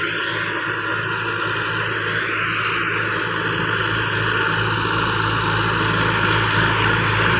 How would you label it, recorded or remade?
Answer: recorded